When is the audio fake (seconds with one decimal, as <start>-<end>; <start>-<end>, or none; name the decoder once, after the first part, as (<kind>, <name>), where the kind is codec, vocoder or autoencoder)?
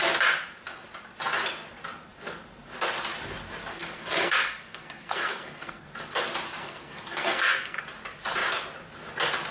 3.7-5.9 (codec, SNAC); 6.6-7.8